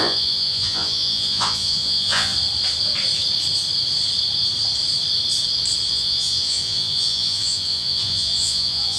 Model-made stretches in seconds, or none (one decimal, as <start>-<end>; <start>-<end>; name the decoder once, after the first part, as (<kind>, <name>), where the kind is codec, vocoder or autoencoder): 0.0-2.3 (vocoder, Vocos); 5.9-9.0